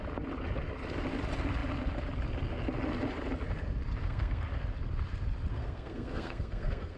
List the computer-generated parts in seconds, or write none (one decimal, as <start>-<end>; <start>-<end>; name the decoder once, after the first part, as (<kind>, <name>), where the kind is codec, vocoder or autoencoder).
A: 4.0-4.5 (codec, SNAC); 5.5-7.0